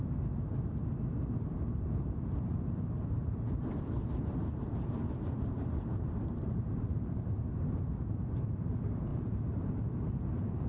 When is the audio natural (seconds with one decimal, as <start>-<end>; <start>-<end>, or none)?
0.0-1.5; 2.8-3.2; 3.8-4.4; 8.7-9.1; 9.7-10.7